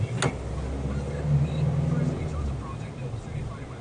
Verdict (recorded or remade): recorded